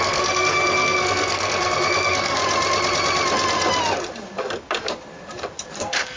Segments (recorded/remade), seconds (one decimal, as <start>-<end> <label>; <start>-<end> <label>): 0.0-2.4 remade; 2.4-5.8 recorded; 5.8-6.2 remade